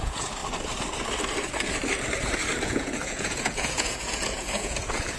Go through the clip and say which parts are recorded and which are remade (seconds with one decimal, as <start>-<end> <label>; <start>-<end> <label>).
0.0-0.4 remade; 0.4-2.6 recorded; 2.6-5.2 remade